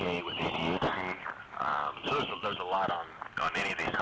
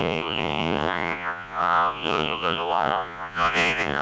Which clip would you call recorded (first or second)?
first